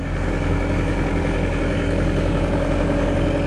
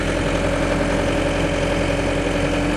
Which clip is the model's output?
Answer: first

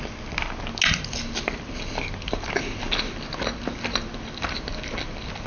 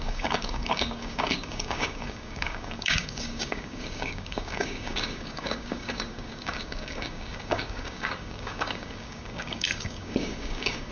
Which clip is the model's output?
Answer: second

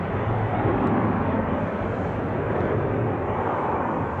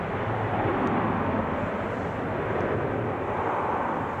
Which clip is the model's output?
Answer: first